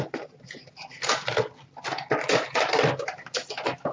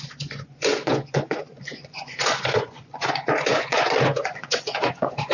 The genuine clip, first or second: first